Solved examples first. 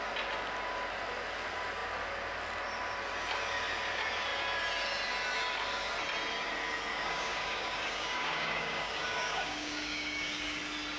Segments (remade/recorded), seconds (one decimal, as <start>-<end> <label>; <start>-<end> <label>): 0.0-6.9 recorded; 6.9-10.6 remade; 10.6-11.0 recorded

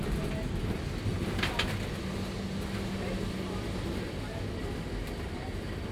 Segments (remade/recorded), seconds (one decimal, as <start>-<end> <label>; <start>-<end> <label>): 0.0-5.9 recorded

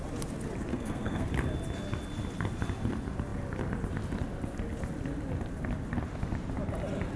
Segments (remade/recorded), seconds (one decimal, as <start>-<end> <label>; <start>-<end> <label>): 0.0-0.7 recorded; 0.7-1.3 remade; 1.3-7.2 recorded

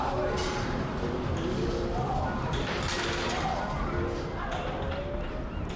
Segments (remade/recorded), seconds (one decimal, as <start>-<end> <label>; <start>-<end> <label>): 0.0-5.8 recorded

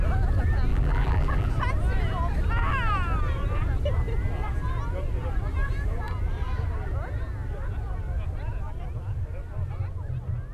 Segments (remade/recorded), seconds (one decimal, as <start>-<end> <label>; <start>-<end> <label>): 0.0-0.7 recorded; 0.7-1.5 remade; 1.5-10.5 recorded